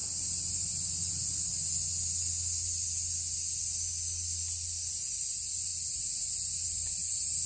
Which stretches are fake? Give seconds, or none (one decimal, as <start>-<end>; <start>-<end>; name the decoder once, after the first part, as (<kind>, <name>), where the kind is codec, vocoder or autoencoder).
none